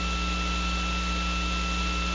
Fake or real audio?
real